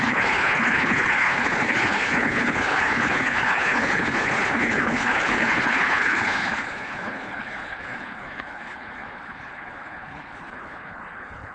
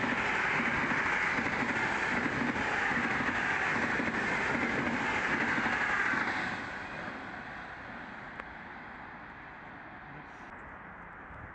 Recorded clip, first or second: second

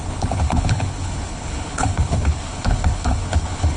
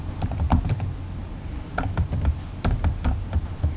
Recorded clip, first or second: second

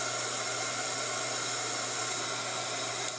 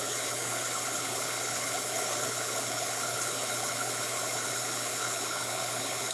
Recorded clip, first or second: first